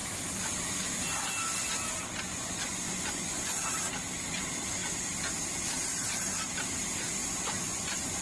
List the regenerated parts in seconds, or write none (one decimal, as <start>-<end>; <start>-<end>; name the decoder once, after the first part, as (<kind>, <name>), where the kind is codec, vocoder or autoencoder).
2.3-3.6 (vocoder, Vocos); 7.2-8.2